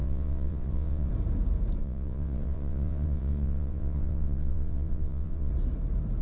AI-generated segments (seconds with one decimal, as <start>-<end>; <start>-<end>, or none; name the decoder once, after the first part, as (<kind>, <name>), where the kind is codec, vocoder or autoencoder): 0.0-1.1 (vocoder, WaveNeXt); 1.8-5.5